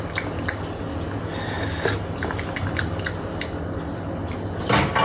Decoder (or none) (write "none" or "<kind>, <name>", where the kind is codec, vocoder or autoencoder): none